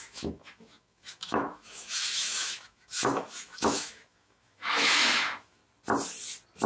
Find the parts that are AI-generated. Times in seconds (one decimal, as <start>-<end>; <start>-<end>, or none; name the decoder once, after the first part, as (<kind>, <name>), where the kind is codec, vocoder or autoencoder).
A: 0.0-5.6 (autoencoder, DAC-VAE)